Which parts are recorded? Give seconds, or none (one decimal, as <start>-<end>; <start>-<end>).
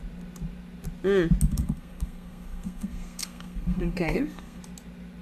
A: 0.0-1.5; 4.6-5.2